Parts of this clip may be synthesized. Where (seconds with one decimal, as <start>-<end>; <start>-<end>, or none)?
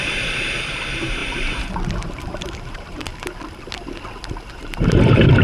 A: 0.0-3.1; 4.5-5.4